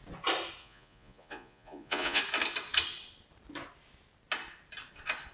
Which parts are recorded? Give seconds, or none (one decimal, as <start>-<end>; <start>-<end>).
0.0-0.6; 2.2-5.3